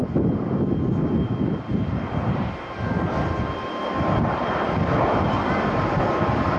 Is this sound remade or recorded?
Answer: recorded